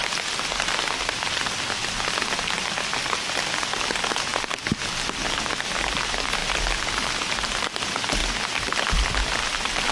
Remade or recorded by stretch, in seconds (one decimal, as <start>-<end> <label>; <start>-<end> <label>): 0.0-9.9 recorded